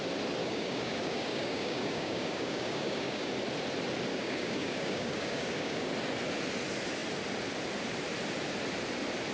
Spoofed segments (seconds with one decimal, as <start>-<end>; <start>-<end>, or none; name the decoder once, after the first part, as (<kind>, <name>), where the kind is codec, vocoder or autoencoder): 0.4-3.3 (codec, DAC); 4.1-5.9